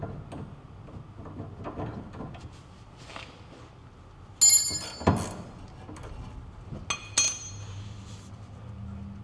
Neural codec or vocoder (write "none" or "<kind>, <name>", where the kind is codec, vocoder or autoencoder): none